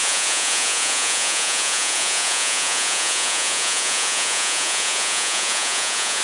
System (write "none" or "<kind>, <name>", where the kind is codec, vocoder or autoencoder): vocoder, Vocos